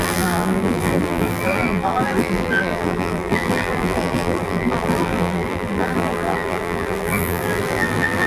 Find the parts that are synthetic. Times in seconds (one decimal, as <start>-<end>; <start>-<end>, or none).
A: 0.0-8.3